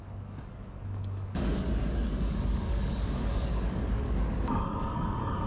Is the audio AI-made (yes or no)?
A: yes